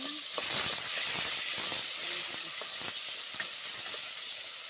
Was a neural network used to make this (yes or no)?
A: no